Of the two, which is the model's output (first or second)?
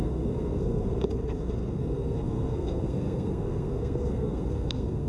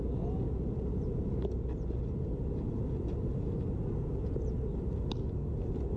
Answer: first